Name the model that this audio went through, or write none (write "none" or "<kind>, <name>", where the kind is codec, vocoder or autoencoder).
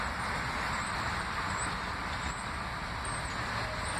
none